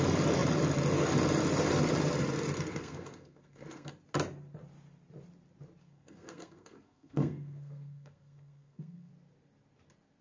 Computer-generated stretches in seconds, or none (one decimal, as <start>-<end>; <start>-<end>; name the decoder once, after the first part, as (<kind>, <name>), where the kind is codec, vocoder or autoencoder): 2.7-3.9 (codec, SNAC); 5.8-9.1